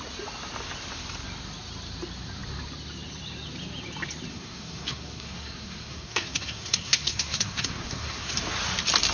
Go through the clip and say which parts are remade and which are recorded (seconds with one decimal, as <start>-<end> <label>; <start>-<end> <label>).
0.0-4.3 recorded; 4.3-8.3 remade; 8.3-9.1 recorded